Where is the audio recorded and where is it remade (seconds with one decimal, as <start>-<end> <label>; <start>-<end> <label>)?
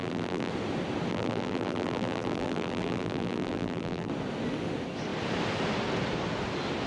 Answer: 0.0-0.5 remade; 0.5-1.1 recorded; 1.1-4.1 remade; 4.1-6.9 recorded